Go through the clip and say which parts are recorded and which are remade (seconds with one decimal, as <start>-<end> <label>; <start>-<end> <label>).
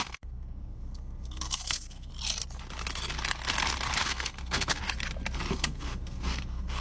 0.0-2.1 remade; 2.1-4.0 recorded; 4.0-4.8 remade; 4.8-5.5 recorded; 5.5-6.8 remade